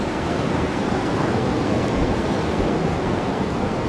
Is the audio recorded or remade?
remade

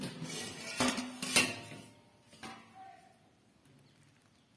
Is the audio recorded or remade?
recorded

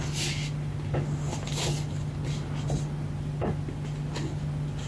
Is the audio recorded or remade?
recorded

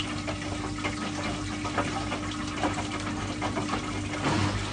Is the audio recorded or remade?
recorded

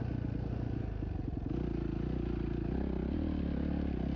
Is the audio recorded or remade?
recorded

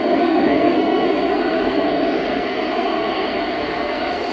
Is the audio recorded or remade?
remade